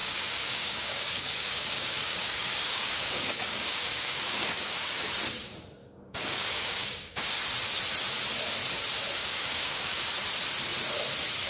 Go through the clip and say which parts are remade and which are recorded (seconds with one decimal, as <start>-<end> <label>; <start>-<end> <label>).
0.0-5.1 remade; 5.1-5.8 recorded; 5.8-7.3 remade; 7.3-9.2 recorded; 9.2-10.1 remade; 10.1-11.5 recorded

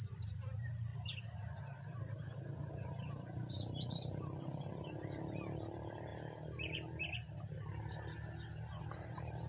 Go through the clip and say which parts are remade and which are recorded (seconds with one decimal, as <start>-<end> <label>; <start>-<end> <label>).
0.0-6.1 remade; 6.1-8.8 recorded; 8.8-9.5 remade

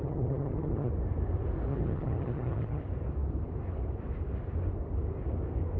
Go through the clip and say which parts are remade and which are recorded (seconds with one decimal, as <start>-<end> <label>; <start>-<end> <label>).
0.0-0.9 remade; 0.9-1.7 recorded; 1.7-2.8 remade; 2.8-5.8 recorded

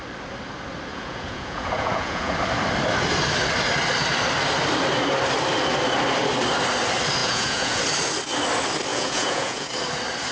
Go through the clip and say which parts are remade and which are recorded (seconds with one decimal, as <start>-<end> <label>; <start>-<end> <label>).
0.0-0.9 recorded; 0.9-2.3 remade; 2.3-7.2 recorded; 7.2-7.8 remade; 7.8-8.9 recorded; 8.9-9.7 remade; 9.7-10.3 recorded